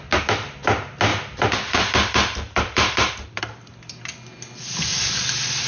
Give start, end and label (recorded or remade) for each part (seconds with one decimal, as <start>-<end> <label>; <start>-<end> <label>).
0.0-1.1 recorded; 1.1-4.0 remade; 4.0-4.9 recorded; 4.9-5.7 remade